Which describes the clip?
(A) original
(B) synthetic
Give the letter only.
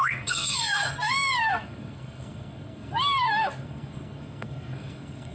B